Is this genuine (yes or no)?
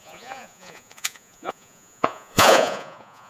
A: no